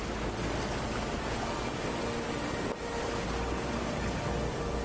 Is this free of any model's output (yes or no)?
yes